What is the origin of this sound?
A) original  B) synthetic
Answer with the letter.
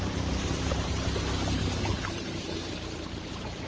B